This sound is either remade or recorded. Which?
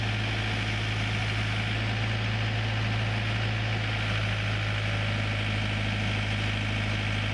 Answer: recorded